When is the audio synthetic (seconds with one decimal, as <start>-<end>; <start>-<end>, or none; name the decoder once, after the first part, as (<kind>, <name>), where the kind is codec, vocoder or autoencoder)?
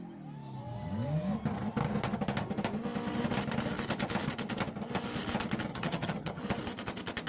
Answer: 5.7-6.4 (vocoder, HiFi-GAN)